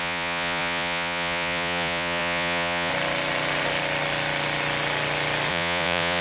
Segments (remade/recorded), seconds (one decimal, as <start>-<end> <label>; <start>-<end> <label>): 0.0-2.9 remade; 2.9-5.5 recorded; 5.5-6.2 remade